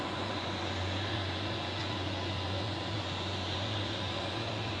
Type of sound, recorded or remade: remade